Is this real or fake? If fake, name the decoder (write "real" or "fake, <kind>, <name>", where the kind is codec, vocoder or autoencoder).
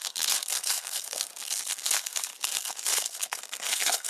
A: fake, codec, SNAC